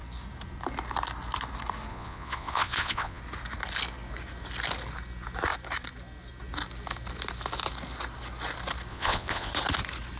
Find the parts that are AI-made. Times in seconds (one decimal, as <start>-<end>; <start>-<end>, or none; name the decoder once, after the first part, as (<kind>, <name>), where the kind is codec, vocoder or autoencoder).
1.9-3.2 (vocoder, Vocos); 8.9-9.5